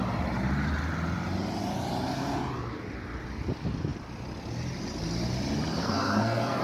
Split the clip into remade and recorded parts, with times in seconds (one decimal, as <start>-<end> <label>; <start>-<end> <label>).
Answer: 0.0-5.8 recorded; 5.8-6.6 remade